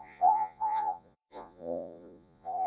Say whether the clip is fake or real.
fake